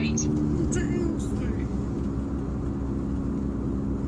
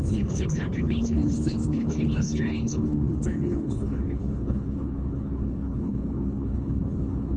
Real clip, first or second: first